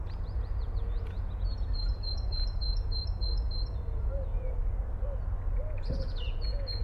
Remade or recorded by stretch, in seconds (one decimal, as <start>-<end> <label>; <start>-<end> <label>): 0.0-4.6 remade; 4.6-5.5 recorded; 5.5-6.8 remade